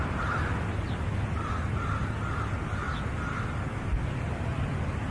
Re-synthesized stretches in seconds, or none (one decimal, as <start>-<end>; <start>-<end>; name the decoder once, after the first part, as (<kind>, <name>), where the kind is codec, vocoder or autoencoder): none